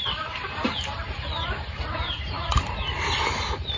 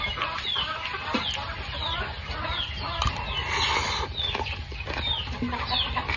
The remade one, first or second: first